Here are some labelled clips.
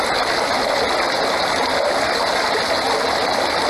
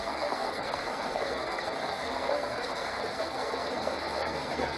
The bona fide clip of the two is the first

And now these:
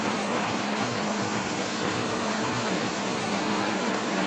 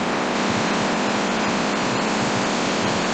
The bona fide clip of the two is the second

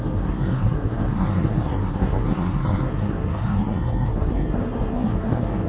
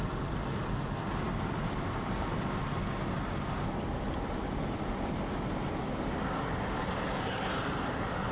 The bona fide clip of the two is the second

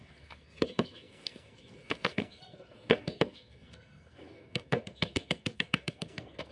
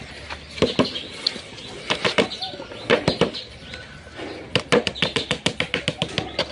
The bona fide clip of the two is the second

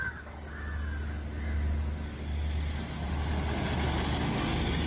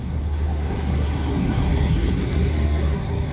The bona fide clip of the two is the first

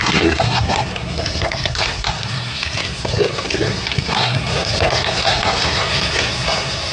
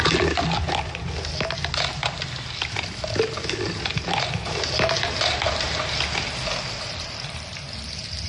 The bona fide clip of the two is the second